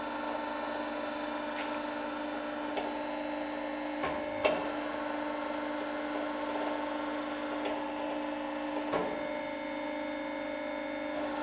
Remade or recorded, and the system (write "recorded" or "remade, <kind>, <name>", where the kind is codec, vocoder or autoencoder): recorded